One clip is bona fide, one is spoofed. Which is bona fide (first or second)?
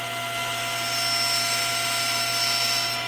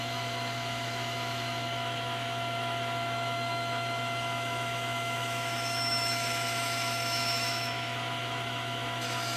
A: first